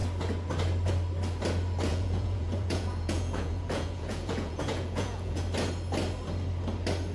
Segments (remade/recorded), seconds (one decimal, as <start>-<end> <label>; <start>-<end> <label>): 0.0-1.9 recorded; 1.9-5.4 remade; 5.4-7.1 recorded